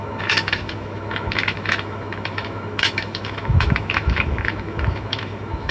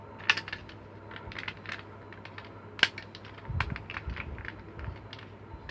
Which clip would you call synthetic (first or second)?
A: first